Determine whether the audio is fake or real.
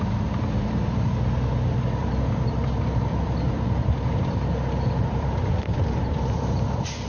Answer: fake